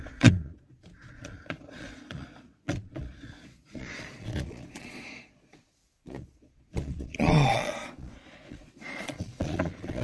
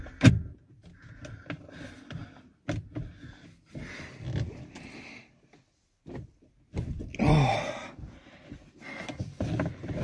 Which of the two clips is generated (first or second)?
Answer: first